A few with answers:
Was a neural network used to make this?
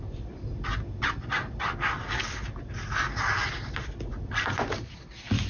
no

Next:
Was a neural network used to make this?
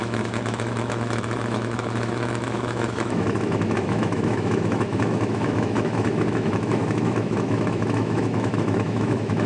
yes